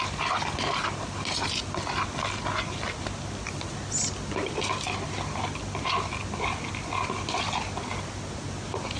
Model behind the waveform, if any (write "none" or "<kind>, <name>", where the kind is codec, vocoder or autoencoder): none